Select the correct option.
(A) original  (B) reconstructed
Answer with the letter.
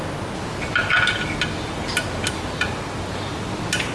A